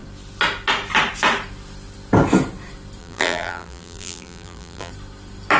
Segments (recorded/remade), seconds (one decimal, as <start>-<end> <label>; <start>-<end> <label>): 0.0-3.0 recorded; 3.0-4.9 remade; 4.9-5.6 recorded